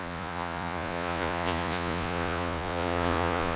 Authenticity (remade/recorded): remade